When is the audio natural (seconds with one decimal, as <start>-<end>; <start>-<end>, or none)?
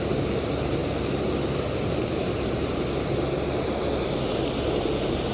0.8-2.0; 2.7-5.3